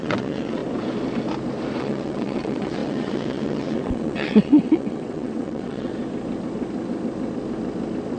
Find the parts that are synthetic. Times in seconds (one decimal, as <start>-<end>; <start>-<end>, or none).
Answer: 0.0-0.6; 1.8-5.9